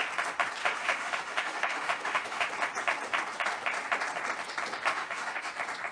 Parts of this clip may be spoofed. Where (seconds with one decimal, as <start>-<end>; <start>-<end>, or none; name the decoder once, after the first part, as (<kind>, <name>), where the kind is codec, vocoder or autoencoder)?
0.6-2.5 (autoencoder, DAC-VAE); 4.9-5.5